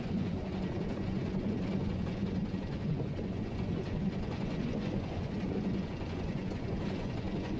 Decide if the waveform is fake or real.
fake